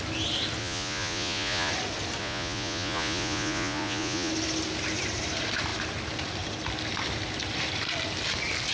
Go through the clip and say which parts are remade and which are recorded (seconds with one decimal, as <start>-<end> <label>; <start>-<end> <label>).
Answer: 0.0-0.6 recorded; 0.6-1.7 remade; 1.7-2.2 recorded; 2.2-4.3 remade; 4.3-8.7 recorded

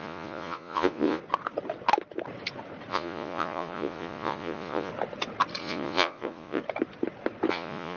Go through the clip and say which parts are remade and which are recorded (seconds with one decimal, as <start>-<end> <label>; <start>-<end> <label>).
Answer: 0.0-1.2 remade; 1.2-2.9 recorded; 2.9-4.9 remade; 4.9-5.6 recorded; 5.6-6.6 remade; 6.6-7.5 recorded; 7.5-8.0 remade

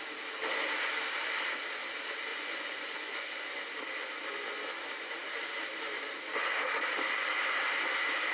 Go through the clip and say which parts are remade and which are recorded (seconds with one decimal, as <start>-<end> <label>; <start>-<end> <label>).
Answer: 0.0-2.3 recorded; 2.3-3.6 remade; 3.6-8.3 recorded

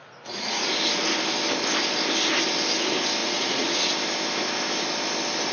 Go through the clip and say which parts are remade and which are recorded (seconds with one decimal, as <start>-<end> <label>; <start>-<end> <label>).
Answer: 0.0-0.7 remade; 0.7-3.2 recorded; 3.2-3.9 remade; 3.9-5.5 recorded